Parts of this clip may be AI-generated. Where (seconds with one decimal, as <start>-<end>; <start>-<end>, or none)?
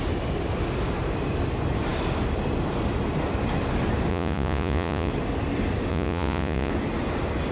4.1-5.1; 5.9-6.7